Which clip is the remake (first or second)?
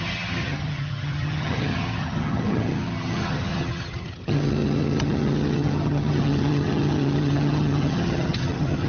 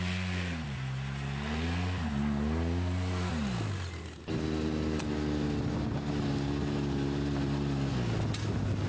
first